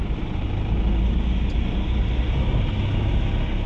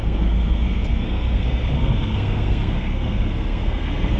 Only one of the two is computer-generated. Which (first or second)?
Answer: second